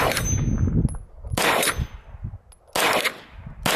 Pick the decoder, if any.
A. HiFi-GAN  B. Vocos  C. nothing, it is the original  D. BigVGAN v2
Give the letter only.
C